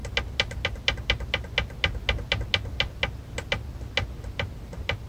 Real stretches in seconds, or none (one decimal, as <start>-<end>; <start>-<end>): 0.0-5.1